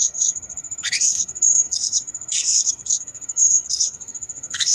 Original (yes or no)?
no